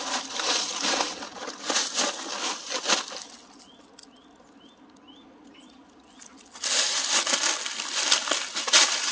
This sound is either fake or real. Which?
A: real